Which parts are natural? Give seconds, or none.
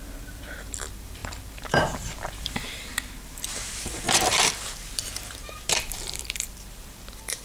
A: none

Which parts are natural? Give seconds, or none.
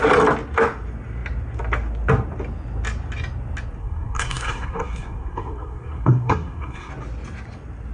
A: 0.0-3.8; 6.9-7.9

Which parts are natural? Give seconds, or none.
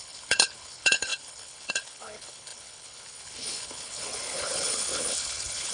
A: none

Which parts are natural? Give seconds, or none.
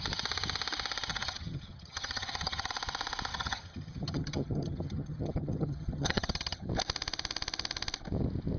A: 0.0-1.1; 2.7-3.3; 6.7-8.6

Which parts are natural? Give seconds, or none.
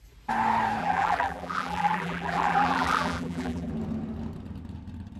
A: 0.0-0.8; 3.7-5.2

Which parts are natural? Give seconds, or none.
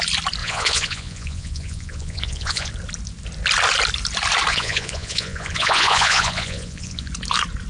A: 0.0-0.4; 2.7-4.5; 7.1-7.7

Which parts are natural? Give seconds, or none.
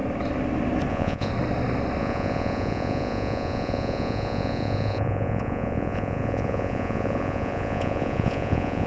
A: 0.0-0.9; 1.3-2.0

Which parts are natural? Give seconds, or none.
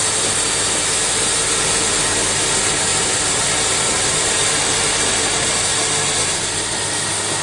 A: 0.0-2.9